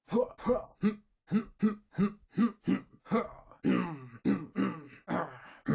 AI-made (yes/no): no